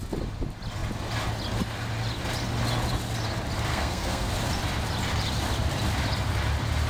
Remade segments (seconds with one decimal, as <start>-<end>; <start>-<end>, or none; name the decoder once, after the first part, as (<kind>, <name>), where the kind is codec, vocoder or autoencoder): 3.7-4.3 (codec, SNAC)